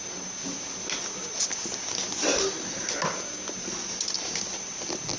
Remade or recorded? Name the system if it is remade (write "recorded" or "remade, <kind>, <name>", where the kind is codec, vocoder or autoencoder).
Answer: recorded